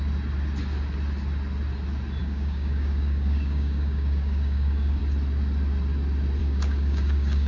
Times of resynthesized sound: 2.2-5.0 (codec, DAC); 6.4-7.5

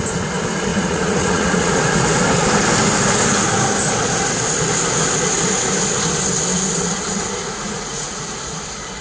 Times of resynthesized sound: 0.7-1.9 (vocoder, Vocos); 7.4-8.4

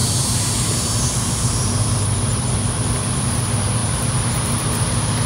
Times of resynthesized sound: 0.0-3.2 (vocoder, BigVGAN v2)